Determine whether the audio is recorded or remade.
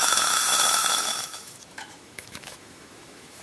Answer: remade